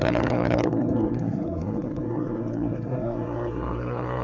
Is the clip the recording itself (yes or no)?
no